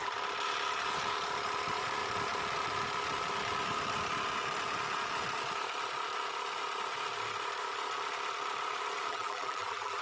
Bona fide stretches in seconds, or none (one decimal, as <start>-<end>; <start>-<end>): 0.0-9.1